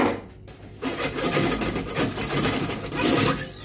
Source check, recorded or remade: recorded